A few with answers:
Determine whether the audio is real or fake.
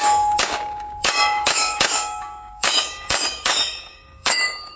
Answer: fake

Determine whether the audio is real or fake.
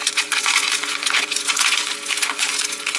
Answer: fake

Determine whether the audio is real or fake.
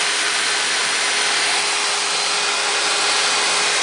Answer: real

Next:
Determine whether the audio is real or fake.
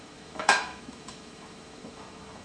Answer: fake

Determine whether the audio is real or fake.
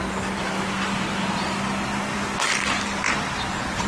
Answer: real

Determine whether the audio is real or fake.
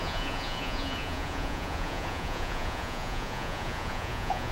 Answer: fake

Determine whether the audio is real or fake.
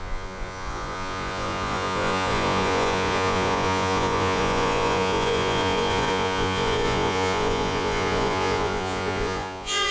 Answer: fake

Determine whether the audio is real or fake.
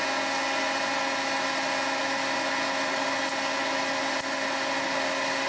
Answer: real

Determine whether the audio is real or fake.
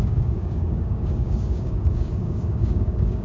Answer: fake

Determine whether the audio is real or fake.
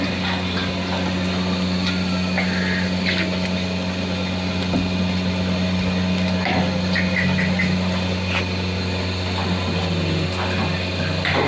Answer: real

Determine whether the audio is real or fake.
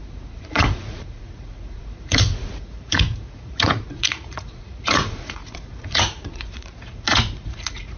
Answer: fake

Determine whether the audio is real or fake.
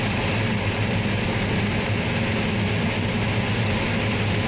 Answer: real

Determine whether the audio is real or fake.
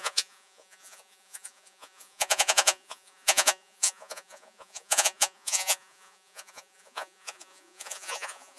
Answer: fake